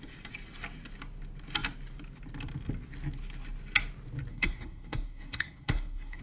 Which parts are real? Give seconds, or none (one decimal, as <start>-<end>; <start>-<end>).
0.0-4.3

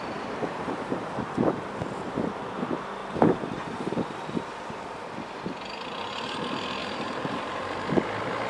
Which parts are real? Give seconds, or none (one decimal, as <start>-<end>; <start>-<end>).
0.0-3.0; 4.2-6.8; 7.6-8.5